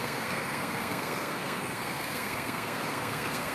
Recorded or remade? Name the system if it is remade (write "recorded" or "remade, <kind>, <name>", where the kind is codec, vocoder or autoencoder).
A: remade, codec, SNAC